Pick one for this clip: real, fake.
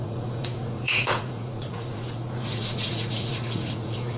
fake